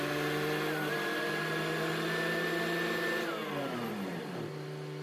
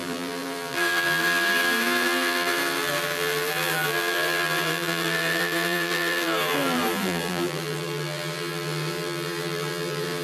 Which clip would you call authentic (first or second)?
first